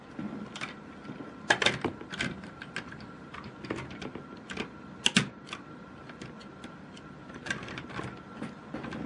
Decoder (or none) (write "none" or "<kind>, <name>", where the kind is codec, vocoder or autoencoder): none